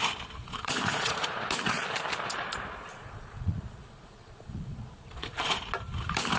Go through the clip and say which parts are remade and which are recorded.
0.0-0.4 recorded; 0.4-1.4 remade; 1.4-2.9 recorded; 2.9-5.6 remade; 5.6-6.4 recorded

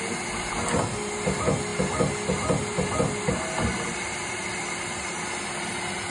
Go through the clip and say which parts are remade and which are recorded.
0.0-6.1 recorded

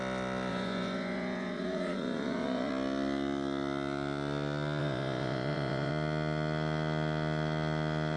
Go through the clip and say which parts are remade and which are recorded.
0.0-0.5 recorded; 0.5-2.7 remade; 2.7-4.8 recorded; 4.8-5.9 remade; 5.9-8.2 recorded

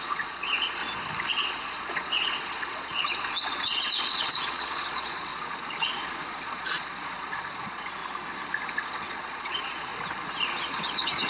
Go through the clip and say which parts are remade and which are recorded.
0.0-0.8 remade; 0.8-1.3 recorded; 1.3-5.3 remade; 5.3-6.0 recorded; 6.0-8.0 remade; 8.0-8.7 recorded; 8.7-9.9 remade; 9.9-10.5 recorded; 10.5-11.3 remade